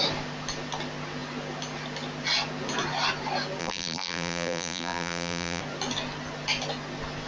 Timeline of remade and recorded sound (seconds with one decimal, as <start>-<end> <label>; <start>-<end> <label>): 0.0-3.6 recorded; 3.6-5.6 remade; 5.6-7.3 recorded